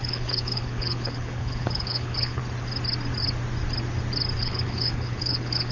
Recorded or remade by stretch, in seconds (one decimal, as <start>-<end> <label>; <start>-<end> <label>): 0.0-2.4 remade; 2.4-4.4 recorded; 4.4-5.7 remade